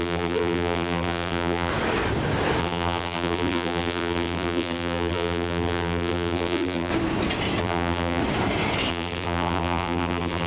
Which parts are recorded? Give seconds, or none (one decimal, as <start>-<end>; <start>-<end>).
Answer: 1.7-2.6; 6.9-7.6; 8.2-8.9